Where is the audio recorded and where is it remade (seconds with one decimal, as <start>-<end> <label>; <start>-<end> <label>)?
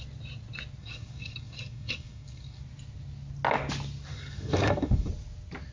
0.0-0.8 recorded; 0.8-2.6 remade; 2.6-4.1 recorded; 4.1-5.1 remade; 5.1-5.7 recorded